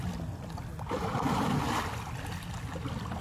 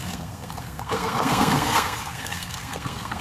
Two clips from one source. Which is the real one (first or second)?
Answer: first